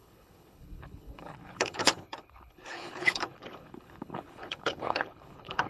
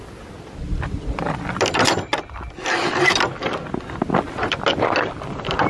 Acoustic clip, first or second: second